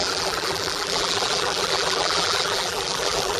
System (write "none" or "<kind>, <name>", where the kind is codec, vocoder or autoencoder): vocoder, BigVGAN v2